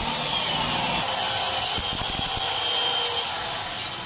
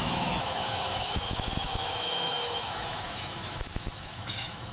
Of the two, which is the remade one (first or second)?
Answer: second